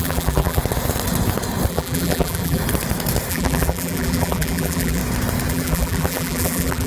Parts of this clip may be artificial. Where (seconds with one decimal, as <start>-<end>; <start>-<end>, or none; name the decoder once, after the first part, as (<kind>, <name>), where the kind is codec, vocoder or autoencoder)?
0.0-0.6 (vocoder, BigVGAN v2); 1.7-2.6; 3.3-5.0; 5.5-6.9